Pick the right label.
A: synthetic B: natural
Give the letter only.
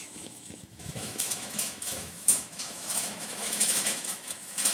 A